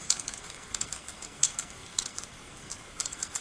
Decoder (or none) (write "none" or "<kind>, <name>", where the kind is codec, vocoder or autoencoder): codec, SNAC